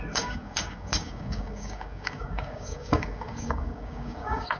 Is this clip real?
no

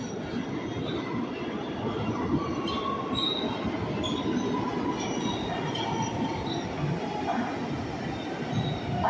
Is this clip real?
yes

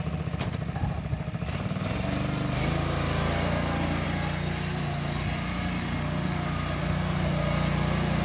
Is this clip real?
yes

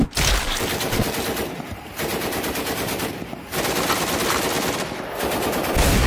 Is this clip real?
yes